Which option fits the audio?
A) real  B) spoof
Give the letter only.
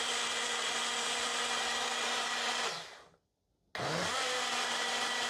A